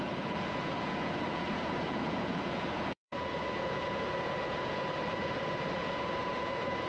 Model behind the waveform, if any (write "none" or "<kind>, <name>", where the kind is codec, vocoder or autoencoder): vocoder, Vocos